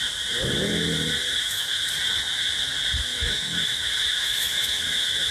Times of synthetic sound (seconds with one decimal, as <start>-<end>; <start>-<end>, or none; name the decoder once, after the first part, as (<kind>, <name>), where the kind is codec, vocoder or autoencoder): 1.3-1.9 (autoencoder, DAC-VAE); 3.1-5.3